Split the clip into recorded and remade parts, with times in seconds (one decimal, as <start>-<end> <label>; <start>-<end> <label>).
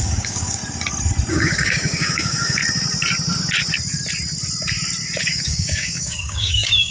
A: 0.0-0.6 remade; 0.6-1.3 recorded; 1.3-2.6 remade; 2.6-5.2 recorded; 5.2-6.9 remade